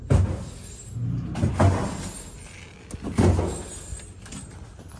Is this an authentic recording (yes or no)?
yes